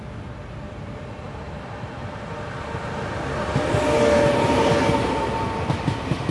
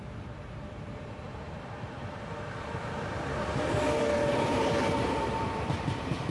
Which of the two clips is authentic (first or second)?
first